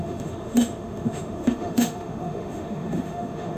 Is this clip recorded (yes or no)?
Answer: no